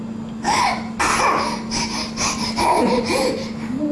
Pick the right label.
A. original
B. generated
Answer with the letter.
A